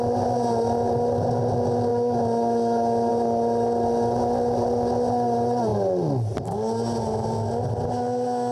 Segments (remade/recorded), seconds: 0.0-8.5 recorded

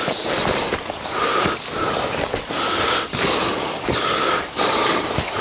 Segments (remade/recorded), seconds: 0.0-3.1 recorded; 3.1-5.0 remade; 5.0-5.4 recorded

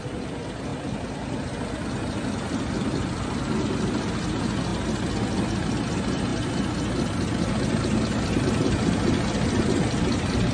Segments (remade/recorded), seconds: 0.0-10.5 recorded

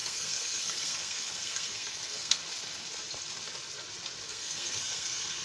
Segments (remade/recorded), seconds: 0.0-2.4 remade; 2.4-4.3 recorded; 4.3-5.4 remade

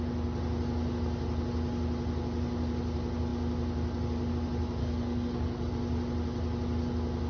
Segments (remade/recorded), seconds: 0.0-4.8 recorded; 4.8-5.7 remade; 5.7-7.3 recorded

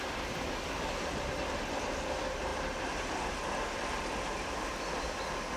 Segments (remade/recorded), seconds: 0.0-5.6 recorded